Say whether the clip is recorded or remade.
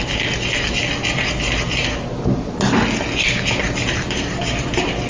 recorded